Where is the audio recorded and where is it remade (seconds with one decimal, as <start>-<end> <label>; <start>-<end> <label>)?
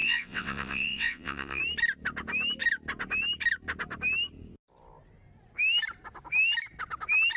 0.0-1.6 remade; 1.6-7.4 recorded